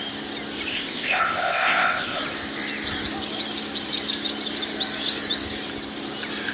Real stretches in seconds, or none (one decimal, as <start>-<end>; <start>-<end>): 0.0-0.7; 2.2-6.5